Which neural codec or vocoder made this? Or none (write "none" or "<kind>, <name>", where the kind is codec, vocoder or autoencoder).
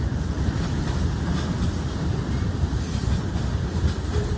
none